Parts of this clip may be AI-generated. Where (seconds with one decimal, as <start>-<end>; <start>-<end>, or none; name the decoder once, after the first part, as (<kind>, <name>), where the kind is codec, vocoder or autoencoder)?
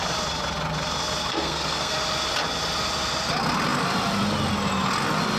1.3-1.9 (codec, SNAC)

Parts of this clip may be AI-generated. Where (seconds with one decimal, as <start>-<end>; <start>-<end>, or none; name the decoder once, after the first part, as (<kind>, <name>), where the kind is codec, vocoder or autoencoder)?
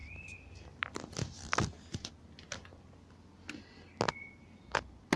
none